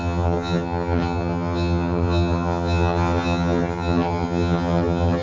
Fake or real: fake